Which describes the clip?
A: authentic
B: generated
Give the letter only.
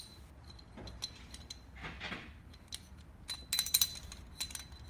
A